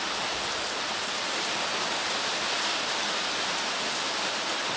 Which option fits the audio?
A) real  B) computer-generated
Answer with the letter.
A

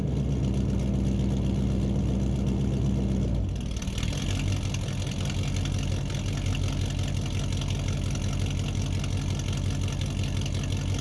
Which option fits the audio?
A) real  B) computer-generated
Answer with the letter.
A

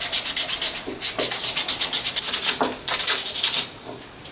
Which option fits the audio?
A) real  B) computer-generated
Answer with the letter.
A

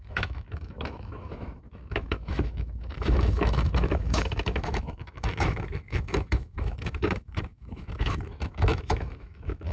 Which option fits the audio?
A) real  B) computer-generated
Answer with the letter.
B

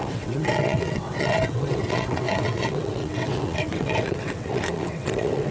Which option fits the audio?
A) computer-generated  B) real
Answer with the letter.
A